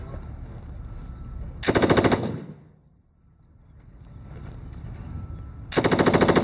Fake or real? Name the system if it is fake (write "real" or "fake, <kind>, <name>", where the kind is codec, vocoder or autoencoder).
real